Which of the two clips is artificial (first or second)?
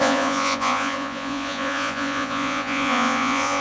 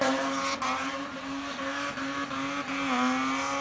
first